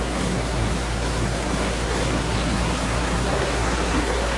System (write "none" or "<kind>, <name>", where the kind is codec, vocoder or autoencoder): codec, SNAC